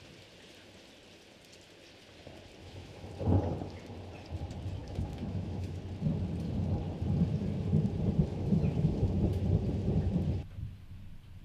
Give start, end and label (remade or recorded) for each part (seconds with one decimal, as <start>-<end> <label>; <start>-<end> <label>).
0.0-2.6 recorded; 2.6-3.1 remade; 3.1-4.8 recorded; 4.8-5.8 remade; 5.8-8.3 recorded; 8.3-9.1 remade; 9.1-11.4 recorded